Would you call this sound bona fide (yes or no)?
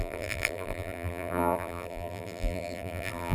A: no